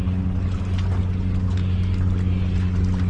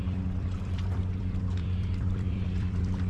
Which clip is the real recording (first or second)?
first